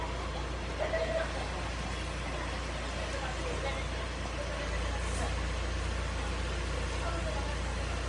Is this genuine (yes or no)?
yes